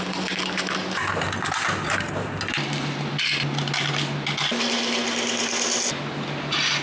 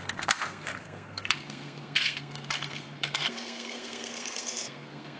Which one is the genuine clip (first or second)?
first